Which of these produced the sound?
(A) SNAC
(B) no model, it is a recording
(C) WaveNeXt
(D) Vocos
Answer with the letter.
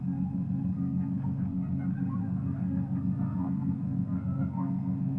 A